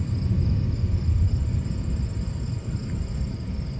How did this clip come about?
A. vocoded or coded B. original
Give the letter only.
B